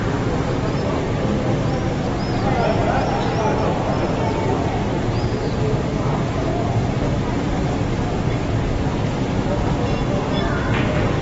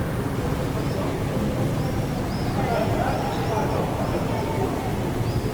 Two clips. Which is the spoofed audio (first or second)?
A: second